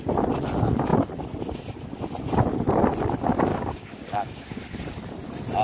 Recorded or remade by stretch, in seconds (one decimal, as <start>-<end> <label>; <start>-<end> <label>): 0.0-3.5 recorded; 3.5-4.6 remade; 4.6-5.6 recorded